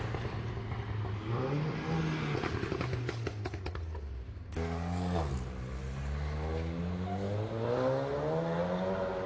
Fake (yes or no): no